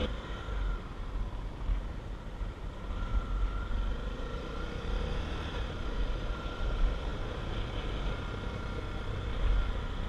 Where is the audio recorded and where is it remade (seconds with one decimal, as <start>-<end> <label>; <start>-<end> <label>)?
0.0-0.9 remade; 0.9-1.7 recorded; 1.7-3.1 remade; 3.1-3.7 recorded; 3.7-10.1 remade